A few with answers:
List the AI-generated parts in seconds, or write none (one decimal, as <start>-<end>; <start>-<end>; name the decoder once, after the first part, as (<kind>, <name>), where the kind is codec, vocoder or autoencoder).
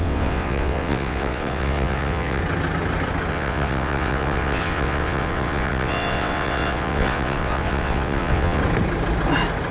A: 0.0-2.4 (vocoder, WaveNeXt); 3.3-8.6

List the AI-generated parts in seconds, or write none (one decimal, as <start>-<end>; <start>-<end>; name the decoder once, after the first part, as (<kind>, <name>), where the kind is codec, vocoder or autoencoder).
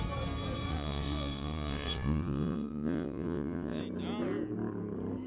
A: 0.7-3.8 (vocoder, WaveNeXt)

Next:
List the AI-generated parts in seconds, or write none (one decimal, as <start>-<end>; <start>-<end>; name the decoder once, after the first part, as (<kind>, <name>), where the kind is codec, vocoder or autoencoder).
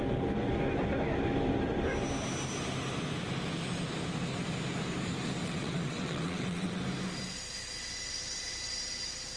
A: 5.4-6.8 (vocoder, WaveNeXt)